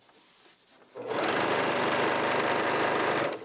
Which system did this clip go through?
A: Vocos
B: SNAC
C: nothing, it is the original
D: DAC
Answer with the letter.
C